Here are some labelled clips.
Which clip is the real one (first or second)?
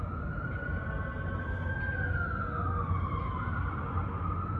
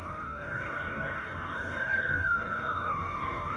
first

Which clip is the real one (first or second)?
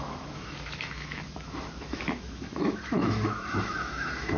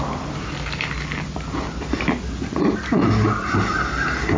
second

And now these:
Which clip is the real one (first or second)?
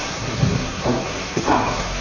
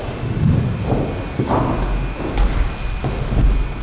second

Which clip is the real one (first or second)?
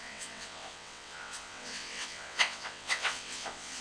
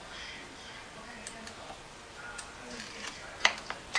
second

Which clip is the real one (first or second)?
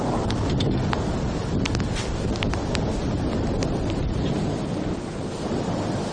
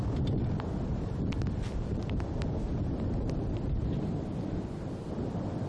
first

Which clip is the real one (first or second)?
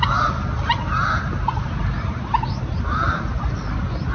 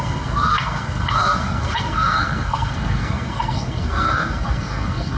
first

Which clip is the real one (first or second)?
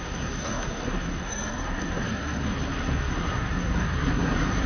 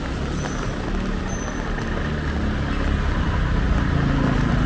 second